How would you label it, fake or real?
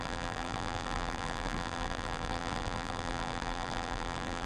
fake